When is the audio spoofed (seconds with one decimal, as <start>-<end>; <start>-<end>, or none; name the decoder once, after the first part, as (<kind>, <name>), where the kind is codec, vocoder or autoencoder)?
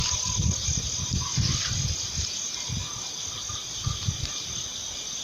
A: none